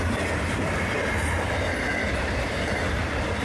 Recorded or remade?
remade